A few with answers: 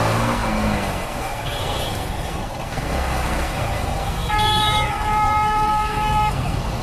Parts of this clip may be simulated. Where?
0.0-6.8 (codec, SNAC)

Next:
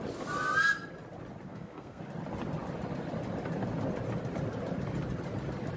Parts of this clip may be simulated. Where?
1.5-2.0 (codec, SNAC)

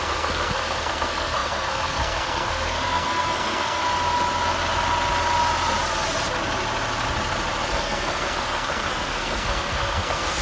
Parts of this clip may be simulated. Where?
0.0-3.8 (codec, SNAC); 7.7-10.4

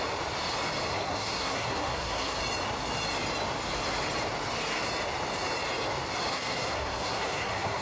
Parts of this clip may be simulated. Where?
0.9-2.4 (codec, SNAC); 6.3-7.8